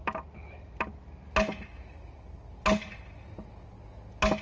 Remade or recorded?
recorded